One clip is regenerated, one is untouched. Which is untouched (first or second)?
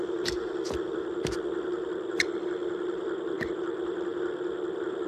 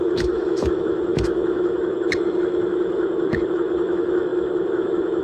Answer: first